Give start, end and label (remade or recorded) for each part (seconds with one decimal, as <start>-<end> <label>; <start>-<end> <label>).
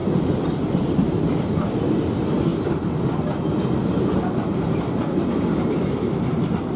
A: 0.0-0.6 recorded; 0.6-2.5 remade; 2.5-6.8 recorded